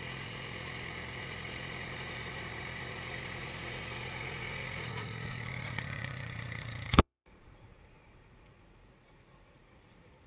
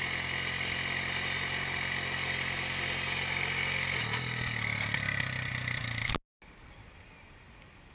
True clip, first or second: second